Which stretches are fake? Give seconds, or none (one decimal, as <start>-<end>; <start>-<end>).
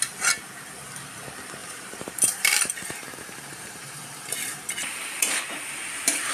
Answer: 1.6-5.4